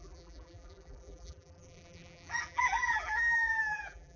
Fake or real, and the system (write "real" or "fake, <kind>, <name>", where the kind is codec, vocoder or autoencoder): fake, vocoder, BigVGAN v2